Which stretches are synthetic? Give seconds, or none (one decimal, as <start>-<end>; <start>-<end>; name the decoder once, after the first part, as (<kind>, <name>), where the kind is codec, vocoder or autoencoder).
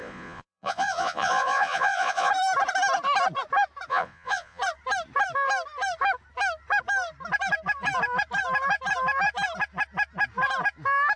0.0-2.3 (vocoder, Vocos); 3.9-4.6